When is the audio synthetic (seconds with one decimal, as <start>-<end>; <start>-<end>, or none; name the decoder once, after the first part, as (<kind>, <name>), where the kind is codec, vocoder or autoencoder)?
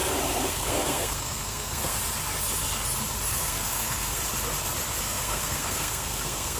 0.5-2.0 (codec, SNAC); 3.3-4.2; 5.0-6.6